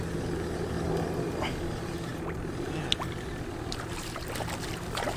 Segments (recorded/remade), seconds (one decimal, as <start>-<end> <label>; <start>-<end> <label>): 0.0-5.2 recorded